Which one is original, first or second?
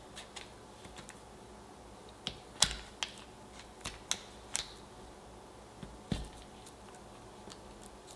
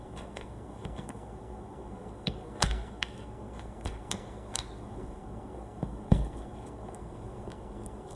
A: first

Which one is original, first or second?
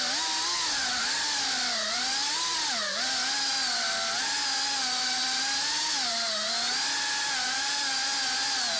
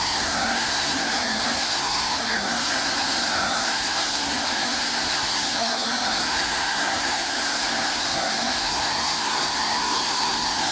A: first